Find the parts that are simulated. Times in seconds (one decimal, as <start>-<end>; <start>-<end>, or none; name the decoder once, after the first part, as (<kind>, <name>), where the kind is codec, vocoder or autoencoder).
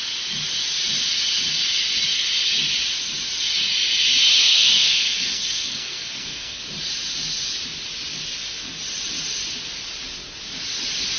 4.4-6.6 (codec, SNAC)